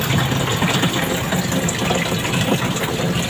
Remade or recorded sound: remade